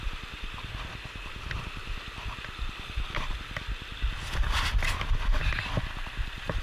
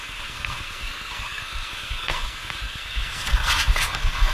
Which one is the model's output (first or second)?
second